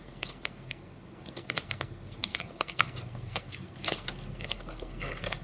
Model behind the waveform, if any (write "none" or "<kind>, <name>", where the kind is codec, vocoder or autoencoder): codec, SNAC